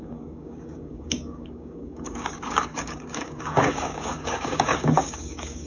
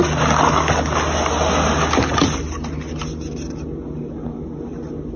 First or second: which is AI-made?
first